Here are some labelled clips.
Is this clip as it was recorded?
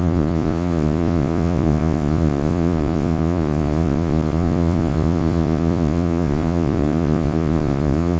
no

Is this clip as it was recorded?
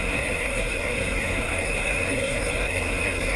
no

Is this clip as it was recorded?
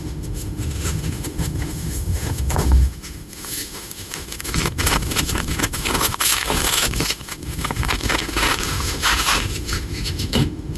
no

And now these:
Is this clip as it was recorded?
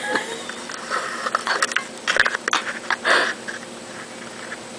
yes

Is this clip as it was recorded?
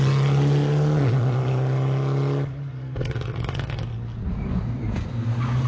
yes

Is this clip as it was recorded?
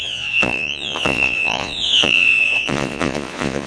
no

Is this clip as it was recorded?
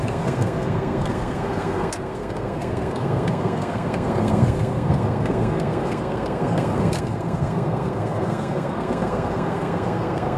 no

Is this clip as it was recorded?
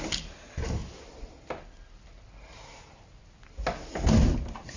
yes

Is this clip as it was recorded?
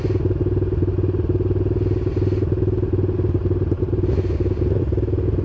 yes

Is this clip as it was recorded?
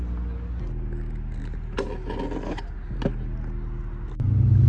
yes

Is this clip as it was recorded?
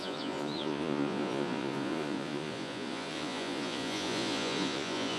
no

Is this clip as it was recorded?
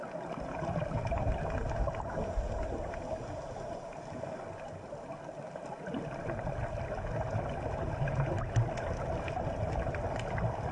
yes